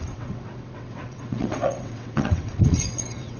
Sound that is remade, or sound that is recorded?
remade